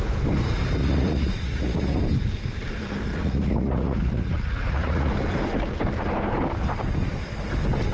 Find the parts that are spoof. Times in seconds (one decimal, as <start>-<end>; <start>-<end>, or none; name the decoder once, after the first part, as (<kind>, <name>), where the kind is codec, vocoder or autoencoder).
0.8-2.0 (vocoder, Vocos); 3.1-5.1